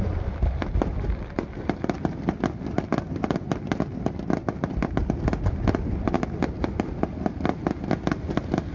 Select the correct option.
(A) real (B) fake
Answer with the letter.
A